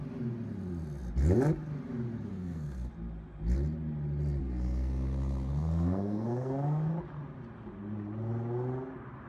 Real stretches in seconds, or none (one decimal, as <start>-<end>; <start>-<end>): 0.0-2.3; 2.9-4.4; 6.9-9.3